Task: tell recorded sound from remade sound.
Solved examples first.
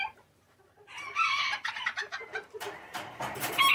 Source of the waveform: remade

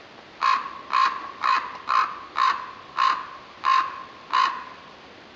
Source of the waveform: recorded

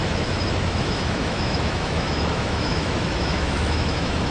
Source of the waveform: remade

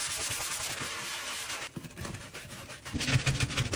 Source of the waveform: recorded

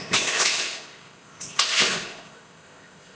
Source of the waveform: remade